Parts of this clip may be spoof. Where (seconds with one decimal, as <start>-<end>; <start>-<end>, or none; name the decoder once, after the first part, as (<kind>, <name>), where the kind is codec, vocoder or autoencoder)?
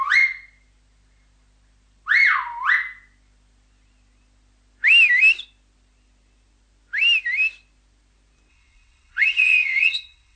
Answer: 8.5-10.4 (vocoder, WaveNeXt)